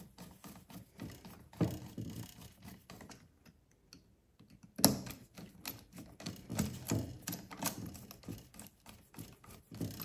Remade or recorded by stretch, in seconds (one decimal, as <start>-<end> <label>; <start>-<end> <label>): 0.0-10.0 recorded